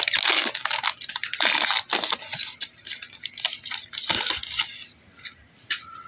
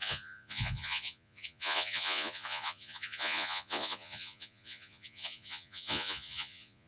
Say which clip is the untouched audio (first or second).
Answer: first